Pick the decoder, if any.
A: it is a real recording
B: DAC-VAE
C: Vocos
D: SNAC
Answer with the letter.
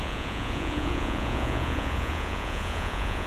C